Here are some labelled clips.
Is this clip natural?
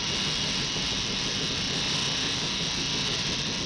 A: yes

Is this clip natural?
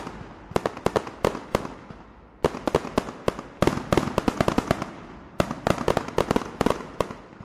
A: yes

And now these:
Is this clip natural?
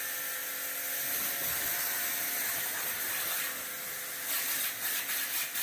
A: yes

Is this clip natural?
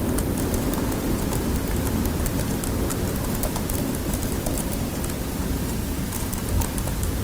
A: yes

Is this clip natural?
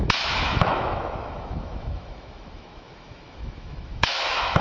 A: no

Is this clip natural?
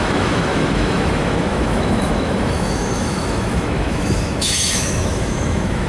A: no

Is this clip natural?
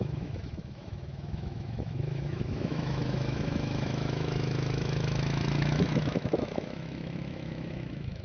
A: no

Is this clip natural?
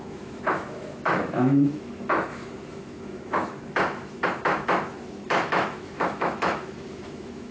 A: no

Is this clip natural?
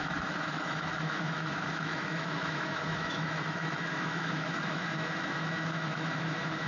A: no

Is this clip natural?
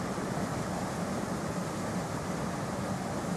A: yes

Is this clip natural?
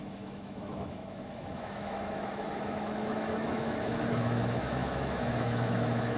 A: no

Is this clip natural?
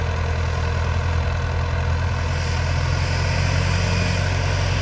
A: yes